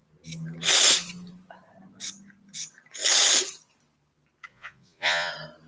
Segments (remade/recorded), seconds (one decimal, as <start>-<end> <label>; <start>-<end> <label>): 0.0-4.5 recorded; 4.5-5.3 remade; 5.3-5.7 recorded